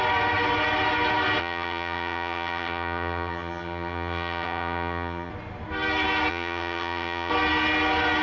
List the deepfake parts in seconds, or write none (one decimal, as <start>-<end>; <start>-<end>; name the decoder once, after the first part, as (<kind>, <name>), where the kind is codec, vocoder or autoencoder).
1.4-5.3 (vocoder, HiFi-GAN); 6.3-7.3